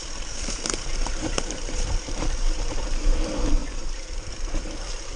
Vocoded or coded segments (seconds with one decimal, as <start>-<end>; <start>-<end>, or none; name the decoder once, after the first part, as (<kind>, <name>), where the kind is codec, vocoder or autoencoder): 0.0-3.1 (vocoder, BigVGAN v2); 3.6-4.3